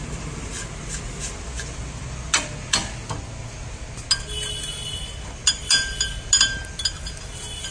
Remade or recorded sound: recorded